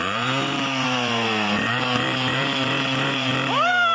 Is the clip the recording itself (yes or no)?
no